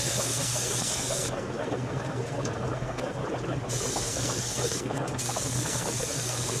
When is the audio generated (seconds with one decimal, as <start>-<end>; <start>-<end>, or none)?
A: 0.0-3.2; 3.9-6.6